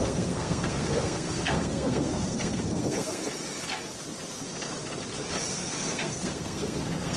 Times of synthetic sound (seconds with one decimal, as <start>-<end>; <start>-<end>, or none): 0.0-3.2; 5.5-7.2